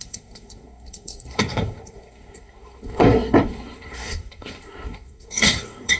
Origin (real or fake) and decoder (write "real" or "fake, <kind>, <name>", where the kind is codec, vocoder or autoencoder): fake, codec, SNAC